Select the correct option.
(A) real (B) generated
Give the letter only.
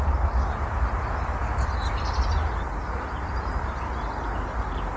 A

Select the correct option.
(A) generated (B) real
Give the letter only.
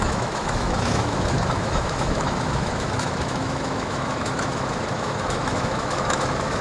A